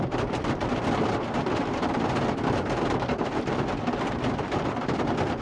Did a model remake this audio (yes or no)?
yes